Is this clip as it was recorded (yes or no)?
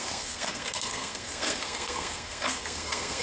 no